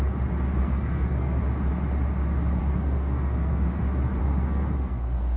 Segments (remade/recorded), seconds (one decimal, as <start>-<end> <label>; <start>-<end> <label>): 0.0-0.6 recorded; 0.6-1.4 remade; 1.4-2.6 recorded; 2.6-3.8 remade; 3.8-4.2 recorded; 4.2-5.4 remade